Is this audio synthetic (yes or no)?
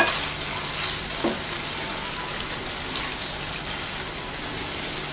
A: no